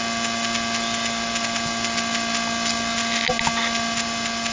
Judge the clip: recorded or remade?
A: recorded